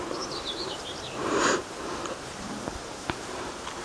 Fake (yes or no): yes